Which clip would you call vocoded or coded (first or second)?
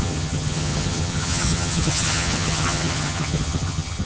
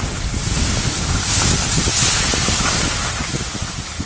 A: first